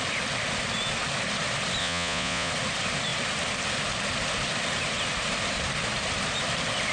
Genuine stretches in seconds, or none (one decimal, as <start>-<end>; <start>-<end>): 0.0-1.8; 2.5-6.9